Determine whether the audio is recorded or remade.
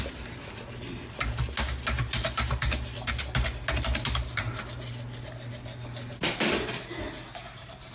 recorded